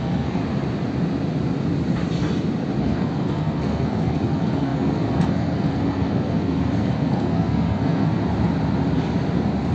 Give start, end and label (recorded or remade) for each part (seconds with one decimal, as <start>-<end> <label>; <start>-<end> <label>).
0.0-0.4 remade; 0.4-2.8 recorded; 2.8-8.2 remade; 8.2-9.7 recorded